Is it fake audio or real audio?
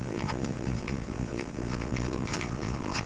fake